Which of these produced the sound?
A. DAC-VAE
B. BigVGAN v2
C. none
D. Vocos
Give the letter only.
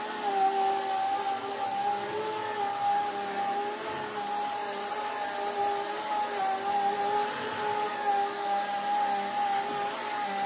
C